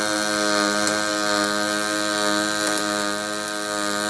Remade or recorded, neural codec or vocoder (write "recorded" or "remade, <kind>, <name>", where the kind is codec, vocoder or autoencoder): recorded